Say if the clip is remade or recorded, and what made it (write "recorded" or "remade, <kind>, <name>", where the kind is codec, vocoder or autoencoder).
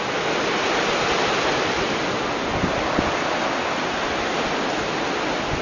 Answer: recorded